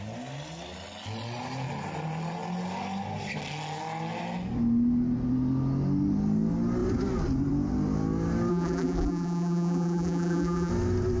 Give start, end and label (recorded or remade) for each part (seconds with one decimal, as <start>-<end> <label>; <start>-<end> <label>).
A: 0.0-8.5 recorded; 8.5-10.7 remade; 10.7-11.2 recorded